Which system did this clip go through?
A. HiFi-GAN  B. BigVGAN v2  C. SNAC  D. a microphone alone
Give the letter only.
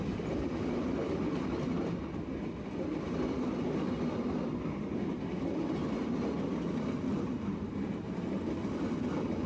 D